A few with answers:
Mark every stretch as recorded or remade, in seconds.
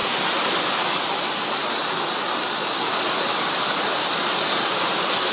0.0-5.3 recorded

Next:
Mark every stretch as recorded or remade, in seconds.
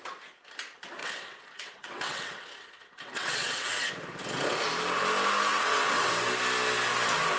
0.0-1.0 recorded; 1.0-3.9 remade; 3.9-5.5 recorded; 5.5-6.1 remade; 6.1-7.4 recorded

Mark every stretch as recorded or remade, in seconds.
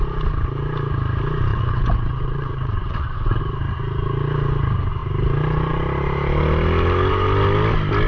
0.0-1.5 recorded; 1.5-3.4 remade; 3.4-8.1 recorded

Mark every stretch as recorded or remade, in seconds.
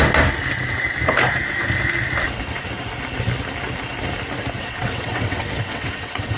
0.0-4.6 recorded; 4.6-6.4 remade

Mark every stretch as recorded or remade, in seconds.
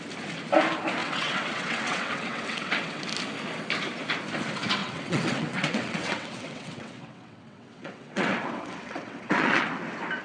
0.0-1.0 recorded; 1.0-3.0 remade; 3.0-4.8 recorded; 4.8-9.7 remade; 9.7-10.2 recorded